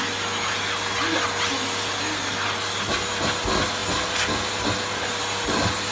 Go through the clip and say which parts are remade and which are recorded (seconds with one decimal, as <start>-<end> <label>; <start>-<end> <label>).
0.0-5.9 recorded